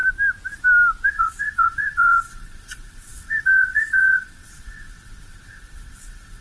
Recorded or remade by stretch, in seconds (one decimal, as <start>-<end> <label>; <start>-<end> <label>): 0.0-1.1 recorded; 1.1-6.4 remade